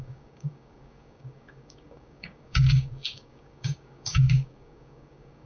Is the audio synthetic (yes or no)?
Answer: yes